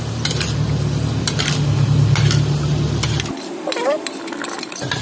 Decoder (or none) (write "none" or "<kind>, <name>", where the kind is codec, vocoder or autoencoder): none